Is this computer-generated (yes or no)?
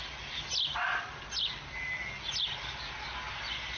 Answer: no